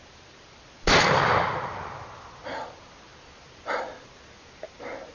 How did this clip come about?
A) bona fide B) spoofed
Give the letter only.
A